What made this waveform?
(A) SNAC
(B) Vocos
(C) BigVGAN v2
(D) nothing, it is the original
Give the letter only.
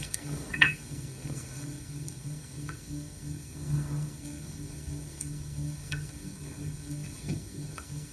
A